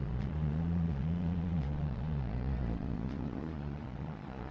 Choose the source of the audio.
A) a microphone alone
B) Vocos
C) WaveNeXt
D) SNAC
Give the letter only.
B